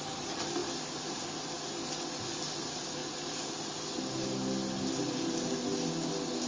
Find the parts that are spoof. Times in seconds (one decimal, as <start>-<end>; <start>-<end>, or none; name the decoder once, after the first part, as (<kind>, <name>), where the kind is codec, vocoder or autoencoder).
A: none